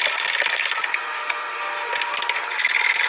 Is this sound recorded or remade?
recorded